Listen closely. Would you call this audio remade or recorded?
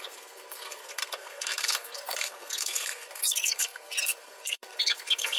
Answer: remade